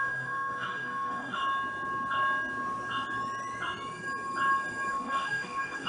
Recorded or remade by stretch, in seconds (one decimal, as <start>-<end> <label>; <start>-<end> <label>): 0.0-1.4 remade; 1.4-4.9 recorded; 4.9-5.9 remade